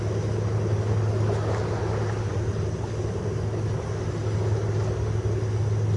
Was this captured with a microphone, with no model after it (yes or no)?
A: yes